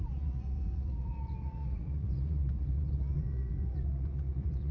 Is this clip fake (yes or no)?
yes